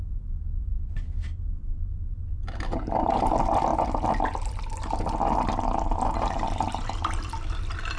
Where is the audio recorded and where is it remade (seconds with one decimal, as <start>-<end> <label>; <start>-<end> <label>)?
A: 0.0-8.0 recorded